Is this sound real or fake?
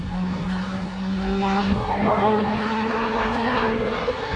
fake